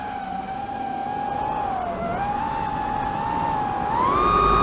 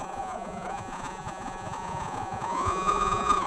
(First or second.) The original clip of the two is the first